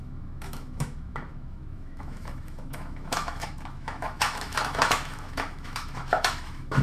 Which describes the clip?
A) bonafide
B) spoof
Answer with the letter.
B